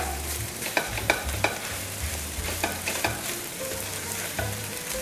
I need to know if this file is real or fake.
fake